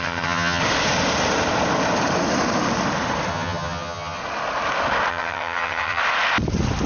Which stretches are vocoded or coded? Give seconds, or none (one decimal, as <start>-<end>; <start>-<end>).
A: 0.0-0.6; 3.3-4.2; 5.1-6.0